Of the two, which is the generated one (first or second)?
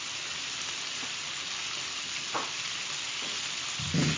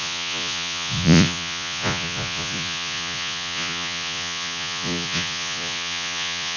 second